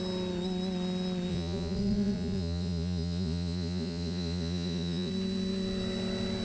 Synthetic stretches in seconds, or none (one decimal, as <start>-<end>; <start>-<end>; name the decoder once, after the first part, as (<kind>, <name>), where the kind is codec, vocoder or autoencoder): 1.3-5.1 (vocoder, Vocos)